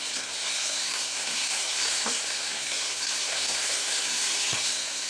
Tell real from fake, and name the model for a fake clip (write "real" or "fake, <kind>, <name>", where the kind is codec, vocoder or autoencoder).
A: fake, codec, SNAC